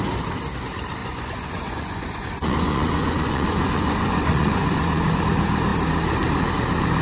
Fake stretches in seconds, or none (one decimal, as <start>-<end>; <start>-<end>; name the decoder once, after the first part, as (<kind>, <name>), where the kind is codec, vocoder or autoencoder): 1.0-5.2 (vocoder, Vocos)